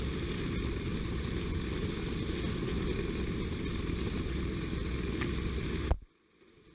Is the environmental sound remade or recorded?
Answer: recorded